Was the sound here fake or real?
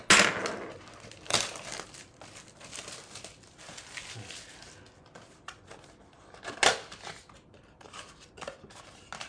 real